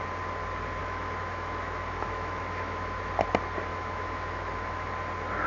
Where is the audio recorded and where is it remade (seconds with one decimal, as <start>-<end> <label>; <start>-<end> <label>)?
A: 0.0-0.8 recorded; 0.8-3.0 remade; 3.0-3.7 recorded; 3.7-4.9 remade; 4.9-5.5 recorded